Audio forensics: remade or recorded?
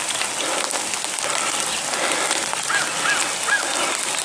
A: recorded